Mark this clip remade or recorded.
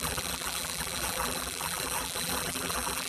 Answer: remade